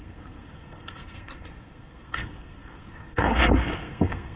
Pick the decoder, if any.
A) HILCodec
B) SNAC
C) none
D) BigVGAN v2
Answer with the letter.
B